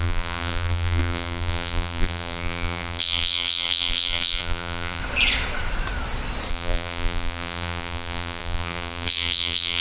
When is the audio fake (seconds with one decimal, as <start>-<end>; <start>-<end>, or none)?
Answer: 0.0-5.0; 6.5-9.8